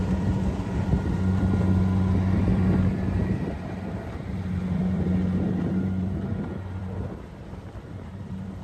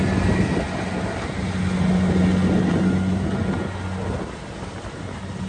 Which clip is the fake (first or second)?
first